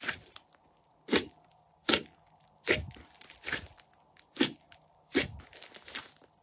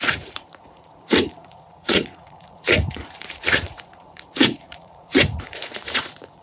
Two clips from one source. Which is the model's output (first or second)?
second